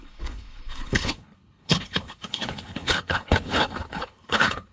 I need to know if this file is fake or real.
fake